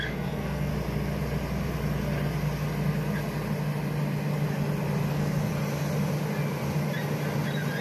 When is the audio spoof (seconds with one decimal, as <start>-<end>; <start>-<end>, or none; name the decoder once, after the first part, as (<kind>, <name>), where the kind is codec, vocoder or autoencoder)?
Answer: 0.0-0.7 (codec, SNAC); 5.1-5.5